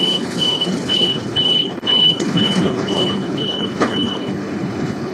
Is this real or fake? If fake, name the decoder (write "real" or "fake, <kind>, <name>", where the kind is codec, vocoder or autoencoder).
fake, codec, HILCodec